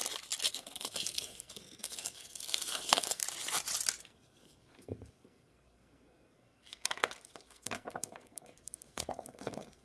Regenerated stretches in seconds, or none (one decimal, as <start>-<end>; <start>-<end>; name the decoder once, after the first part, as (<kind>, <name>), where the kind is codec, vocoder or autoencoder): 0.5-3.2 (codec, SNAC); 4.0-9.8